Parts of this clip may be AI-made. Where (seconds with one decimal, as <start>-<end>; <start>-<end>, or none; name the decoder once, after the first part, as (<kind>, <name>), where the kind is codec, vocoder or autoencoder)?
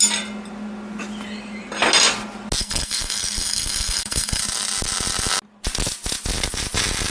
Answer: 2.6-4.4 (codec, SNAC)